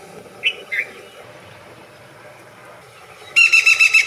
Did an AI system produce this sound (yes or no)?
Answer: no